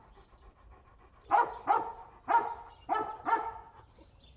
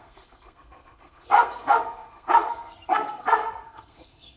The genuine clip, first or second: first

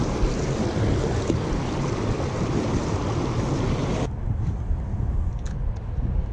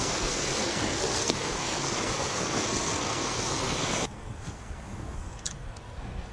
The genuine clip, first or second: first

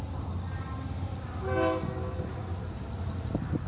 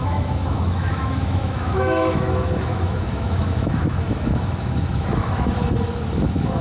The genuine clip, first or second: first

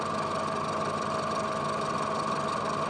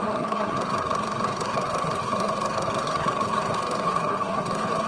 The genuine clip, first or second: first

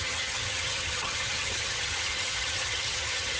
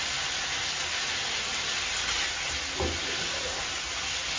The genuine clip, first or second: second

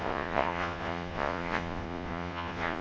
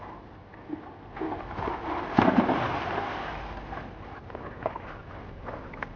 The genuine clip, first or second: second